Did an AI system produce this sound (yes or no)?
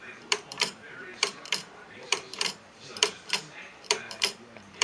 yes